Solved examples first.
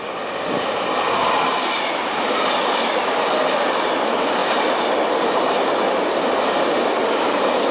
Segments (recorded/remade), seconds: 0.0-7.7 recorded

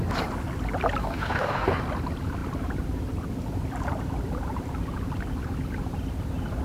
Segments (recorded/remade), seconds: 0.0-1.0 recorded; 1.0-1.8 remade; 1.8-6.6 recorded

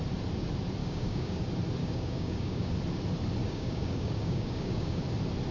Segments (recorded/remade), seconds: 0.0-0.8 recorded; 0.8-1.4 remade; 1.4-1.8 recorded; 1.8-2.7 remade; 2.7-3.4 recorded; 3.4-5.0 remade; 5.0-5.5 recorded

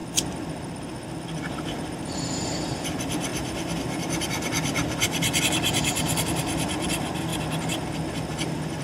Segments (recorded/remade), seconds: 0.0-1.4 recorded; 1.4-7.3 remade; 7.3-8.1 recorded; 8.1-8.8 remade

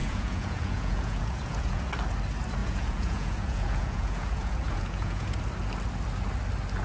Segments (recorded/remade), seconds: 0.0-1.8 remade; 1.8-2.6 recorded; 2.6-5.4 remade; 5.4-6.8 recorded

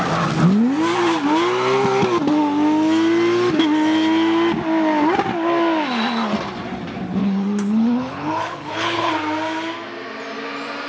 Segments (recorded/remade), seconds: 0.0-7.2 recorded; 7.2-9.1 remade; 9.1-10.9 recorded